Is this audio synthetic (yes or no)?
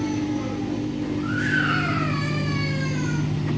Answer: no